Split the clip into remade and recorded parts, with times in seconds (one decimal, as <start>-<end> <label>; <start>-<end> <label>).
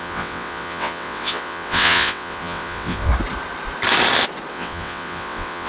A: 0.0-3.1 remade; 3.1-4.5 recorded; 4.5-5.7 remade